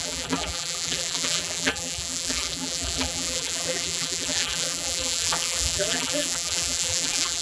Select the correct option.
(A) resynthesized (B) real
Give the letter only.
A